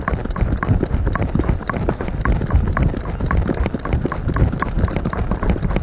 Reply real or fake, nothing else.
real